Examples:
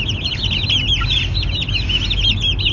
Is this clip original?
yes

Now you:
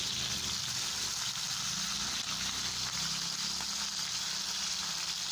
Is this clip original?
yes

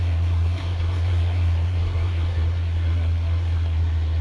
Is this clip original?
no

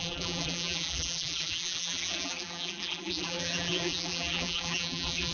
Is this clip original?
no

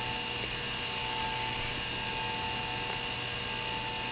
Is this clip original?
yes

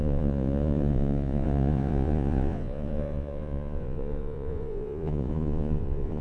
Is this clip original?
no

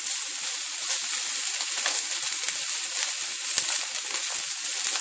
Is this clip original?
yes